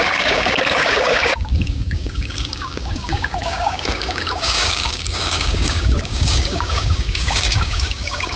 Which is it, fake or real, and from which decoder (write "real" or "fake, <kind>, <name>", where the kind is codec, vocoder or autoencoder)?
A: fake, codec, DAC